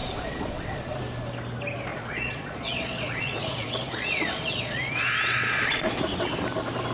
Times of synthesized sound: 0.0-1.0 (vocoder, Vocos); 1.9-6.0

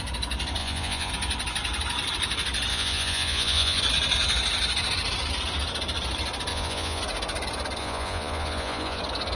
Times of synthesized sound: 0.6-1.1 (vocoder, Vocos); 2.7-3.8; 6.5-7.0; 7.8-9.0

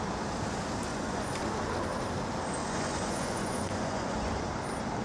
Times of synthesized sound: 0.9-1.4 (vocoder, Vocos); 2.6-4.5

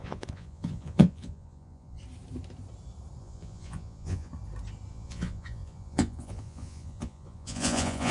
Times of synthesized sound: 0.0-2.0 (vocoder, Vocos); 3.2-4.3; 4.9-8.1

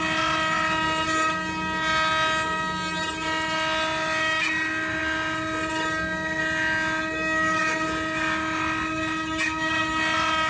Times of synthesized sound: none

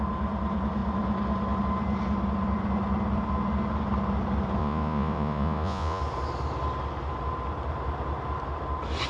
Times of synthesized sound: 4.6-6.0 (vocoder, Vocos)

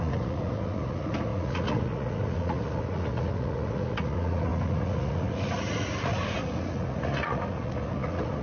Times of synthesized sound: 0.0-8.4 (vocoder, Vocos)

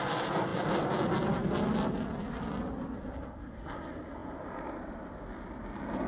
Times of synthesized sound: none